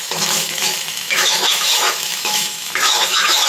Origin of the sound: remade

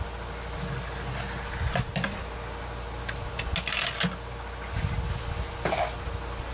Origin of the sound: recorded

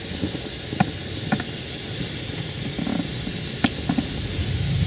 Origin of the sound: recorded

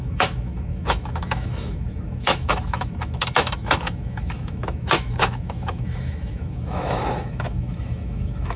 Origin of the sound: remade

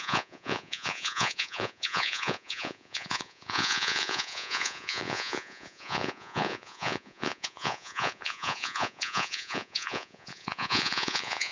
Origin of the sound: remade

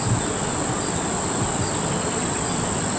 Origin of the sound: recorded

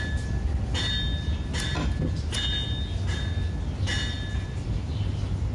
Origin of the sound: recorded